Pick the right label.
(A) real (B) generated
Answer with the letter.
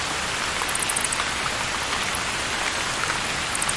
A